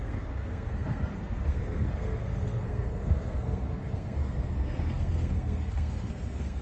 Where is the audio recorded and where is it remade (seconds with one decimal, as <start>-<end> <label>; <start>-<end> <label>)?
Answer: 0.0-6.6 remade